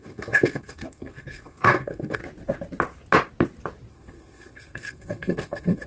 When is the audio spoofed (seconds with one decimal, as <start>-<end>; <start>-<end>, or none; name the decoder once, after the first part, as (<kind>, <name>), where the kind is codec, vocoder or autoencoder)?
0.0-2.2 (codec, SNAC); 3.9-5.9